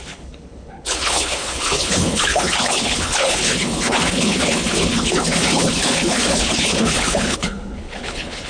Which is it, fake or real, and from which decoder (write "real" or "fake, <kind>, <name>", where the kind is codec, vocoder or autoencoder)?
fake, codec, HILCodec